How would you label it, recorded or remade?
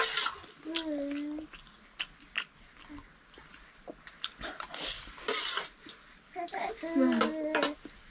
recorded